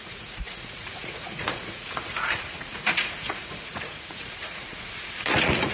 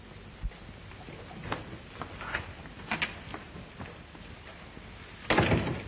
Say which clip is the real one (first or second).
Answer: second